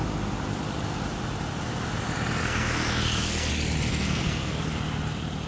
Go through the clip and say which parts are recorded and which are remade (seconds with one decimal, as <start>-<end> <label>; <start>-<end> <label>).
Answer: 0.0-2.4 recorded; 2.4-3.5 remade; 3.5-3.9 recorded; 3.9-4.6 remade; 4.6-5.5 recorded